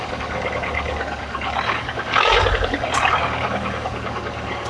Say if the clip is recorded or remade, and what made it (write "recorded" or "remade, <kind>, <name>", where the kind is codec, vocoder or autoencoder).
remade, codec, DAC